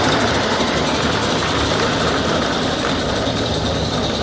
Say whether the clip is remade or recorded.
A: remade